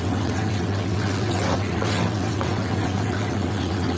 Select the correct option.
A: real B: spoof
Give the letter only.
B